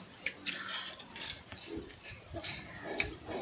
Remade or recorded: recorded